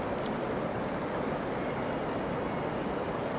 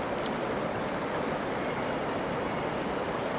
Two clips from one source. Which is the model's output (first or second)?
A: second